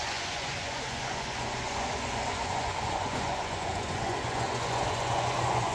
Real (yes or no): no